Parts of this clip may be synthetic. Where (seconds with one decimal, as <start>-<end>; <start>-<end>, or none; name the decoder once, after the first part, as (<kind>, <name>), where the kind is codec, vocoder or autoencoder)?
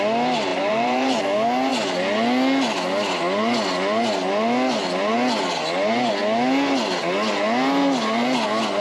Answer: 0.5-1.2 (vocoder, BigVGAN v2)